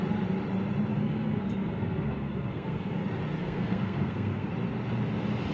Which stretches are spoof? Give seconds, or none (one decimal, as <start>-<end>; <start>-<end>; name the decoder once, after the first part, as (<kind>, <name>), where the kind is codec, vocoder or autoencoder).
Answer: 0.9-3.0 (codec, SNAC); 3.4-4.5